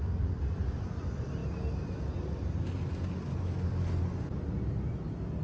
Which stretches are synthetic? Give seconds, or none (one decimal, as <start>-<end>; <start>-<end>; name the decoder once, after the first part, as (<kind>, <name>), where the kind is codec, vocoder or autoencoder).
none